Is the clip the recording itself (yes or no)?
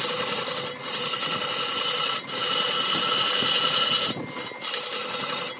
yes